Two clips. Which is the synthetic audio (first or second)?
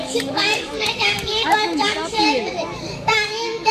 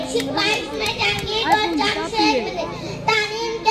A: first